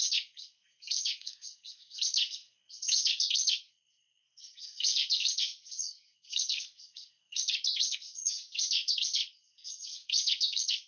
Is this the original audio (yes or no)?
no